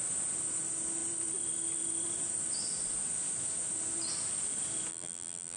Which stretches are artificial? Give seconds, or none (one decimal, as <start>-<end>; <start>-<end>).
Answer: 4.9-5.6